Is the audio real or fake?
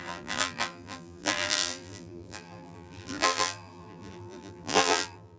fake